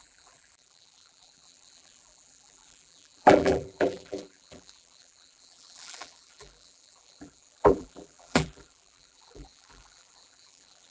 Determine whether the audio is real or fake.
fake